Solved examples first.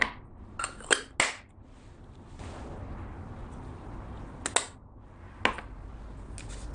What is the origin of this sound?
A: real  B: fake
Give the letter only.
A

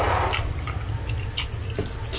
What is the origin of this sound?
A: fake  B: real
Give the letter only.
B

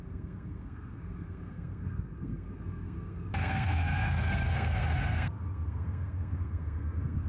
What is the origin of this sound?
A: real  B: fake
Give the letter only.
B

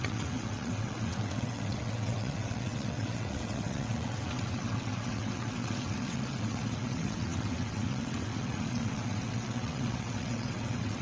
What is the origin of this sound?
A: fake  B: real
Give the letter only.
A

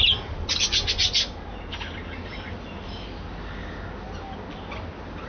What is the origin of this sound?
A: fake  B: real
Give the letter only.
B